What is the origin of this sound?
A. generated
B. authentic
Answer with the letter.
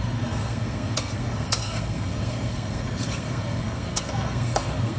A